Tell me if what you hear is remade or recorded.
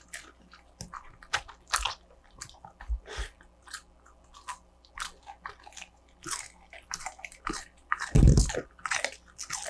recorded